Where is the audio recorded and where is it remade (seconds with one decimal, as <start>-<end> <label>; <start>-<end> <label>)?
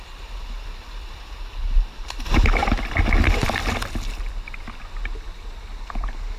0.0-2.6 recorded; 2.6-4.3 remade; 4.3-6.4 recorded